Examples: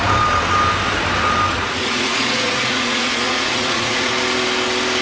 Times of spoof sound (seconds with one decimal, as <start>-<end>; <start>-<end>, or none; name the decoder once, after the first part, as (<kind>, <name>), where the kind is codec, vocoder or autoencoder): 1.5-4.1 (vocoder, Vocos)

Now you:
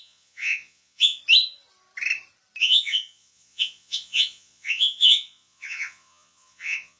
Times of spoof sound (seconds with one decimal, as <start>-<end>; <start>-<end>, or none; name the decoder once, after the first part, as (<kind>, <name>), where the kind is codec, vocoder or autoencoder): 0.0-1.2 (vocoder, Vocos); 2.6-7.0

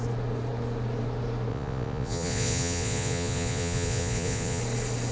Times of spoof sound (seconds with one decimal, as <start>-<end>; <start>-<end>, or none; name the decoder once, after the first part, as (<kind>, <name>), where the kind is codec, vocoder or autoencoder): 1.5-4.6 (vocoder, Vocos)

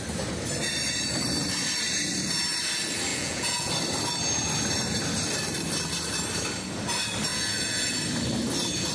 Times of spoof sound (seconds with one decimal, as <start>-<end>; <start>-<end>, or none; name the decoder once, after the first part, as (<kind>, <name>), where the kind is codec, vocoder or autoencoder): 3.1-3.7 (vocoder, Vocos); 7.3-7.9

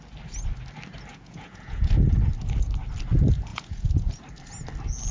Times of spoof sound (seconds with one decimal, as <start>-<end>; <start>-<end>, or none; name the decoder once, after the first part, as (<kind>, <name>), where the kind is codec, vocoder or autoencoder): 1.1-1.9 (vocoder, Vocos); 3.5-4.1

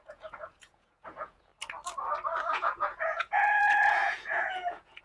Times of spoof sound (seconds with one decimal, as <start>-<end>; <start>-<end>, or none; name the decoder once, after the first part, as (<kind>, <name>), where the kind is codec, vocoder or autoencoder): 0.0-1.5 (vocoder, Vocos); 2.5-5.0